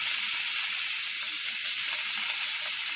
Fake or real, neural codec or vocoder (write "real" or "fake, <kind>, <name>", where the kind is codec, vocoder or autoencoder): real